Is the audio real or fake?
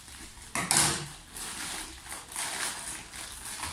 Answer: real